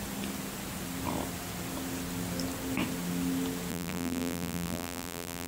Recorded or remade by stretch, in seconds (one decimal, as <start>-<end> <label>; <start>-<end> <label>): 0.0-3.7 recorded; 3.7-5.5 remade